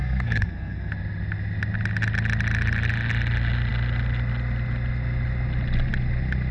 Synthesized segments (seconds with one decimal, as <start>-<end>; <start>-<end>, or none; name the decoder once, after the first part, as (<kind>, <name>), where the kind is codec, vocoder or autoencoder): 0.0-0.9 (codec, SNAC)